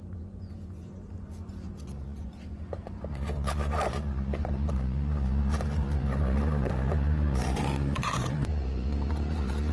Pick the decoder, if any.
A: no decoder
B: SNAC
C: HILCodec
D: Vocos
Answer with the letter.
D